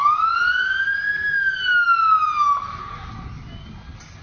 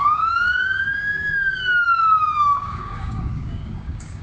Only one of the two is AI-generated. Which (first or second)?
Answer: second